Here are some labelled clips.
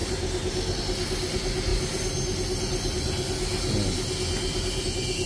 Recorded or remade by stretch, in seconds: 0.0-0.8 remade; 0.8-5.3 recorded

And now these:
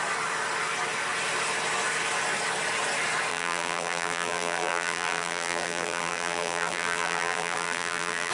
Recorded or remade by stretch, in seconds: 0.0-3.3 recorded; 3.3-8.3 remade

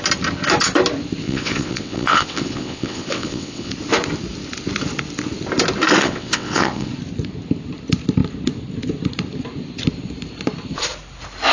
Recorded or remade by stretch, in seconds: 0.0-1.2 recorded; 1.2-3.7 remade; 3.7-6.0 recorded; 6.0-6.9 remade; 6.9-11.5 recorded

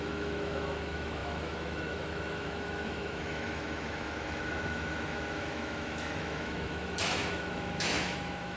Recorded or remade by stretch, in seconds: 0.0-8.6 remade

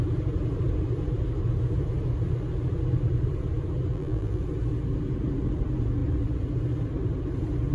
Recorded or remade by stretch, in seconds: 0.0-3.9 recorded; 3.9-4.4 remade; 4.4-7.7 recorded